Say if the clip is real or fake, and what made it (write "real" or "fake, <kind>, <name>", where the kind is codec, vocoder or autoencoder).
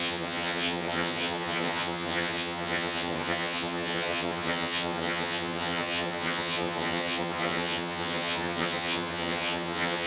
fake, vocoder, HiFi-GAN